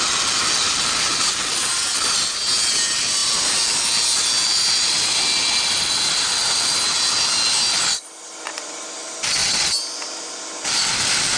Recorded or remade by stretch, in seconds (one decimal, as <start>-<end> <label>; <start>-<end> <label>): 0.0-11.4 recorded

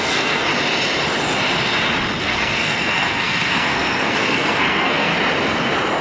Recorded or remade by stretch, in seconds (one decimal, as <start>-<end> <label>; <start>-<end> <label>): 0.0-0.5 remade; 0.5-2.2 recorded; 2.2-5.1 remade; 5.1-6.0 recorded

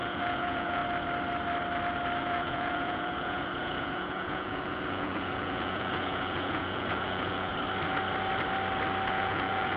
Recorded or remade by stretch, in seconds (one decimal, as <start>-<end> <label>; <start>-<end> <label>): 0.0-0.8 remade; 0.8-2.2 recorded; 2.2-7.5 remade; 7.5-9.1 recorded; 9.1-9.8 remade

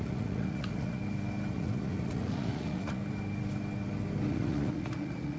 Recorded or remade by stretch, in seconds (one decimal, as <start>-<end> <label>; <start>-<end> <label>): 0.0-1.0 remade; 1.0-1.5 recorded; 1.5-3.0 remade; 3.0-4.3 recorded; 4.3-5.4 remade

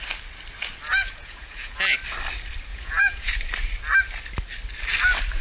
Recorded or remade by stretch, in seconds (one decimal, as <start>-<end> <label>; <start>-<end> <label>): 0.0-0.9 recorded; 0.9-2.0 remade; 2.0-2.7 recorded; 2.7-3.3 remade; 3.3-5.4 recorded